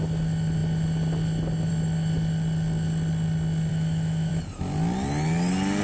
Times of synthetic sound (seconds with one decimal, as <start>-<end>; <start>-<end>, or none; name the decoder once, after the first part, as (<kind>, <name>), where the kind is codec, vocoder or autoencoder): 3.7-4.3 (autoencoder, DAC-VAE)